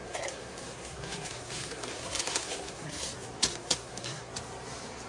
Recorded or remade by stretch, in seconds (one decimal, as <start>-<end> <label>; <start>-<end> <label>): 0.0-3.1 remade; 3.1-3.5 recorded; 3.5-4.3 remade; 4.3-5.1 recorded